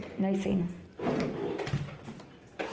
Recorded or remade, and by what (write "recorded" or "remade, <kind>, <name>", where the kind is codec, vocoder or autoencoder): recorded